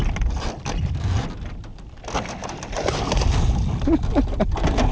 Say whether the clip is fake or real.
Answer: real